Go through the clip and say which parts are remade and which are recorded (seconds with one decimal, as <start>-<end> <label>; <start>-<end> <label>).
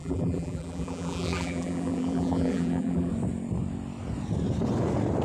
0.0-3.1 remade; 3.1-5.2 recorded